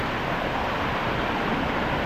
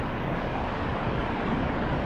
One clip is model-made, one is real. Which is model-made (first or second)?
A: second